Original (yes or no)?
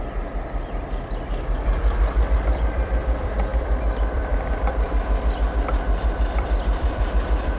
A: no